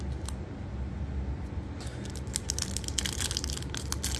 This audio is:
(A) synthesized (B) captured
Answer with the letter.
B